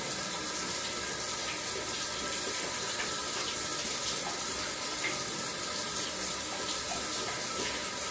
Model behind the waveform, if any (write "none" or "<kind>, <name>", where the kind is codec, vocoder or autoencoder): none